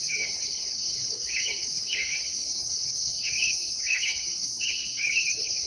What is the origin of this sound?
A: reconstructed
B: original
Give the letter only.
A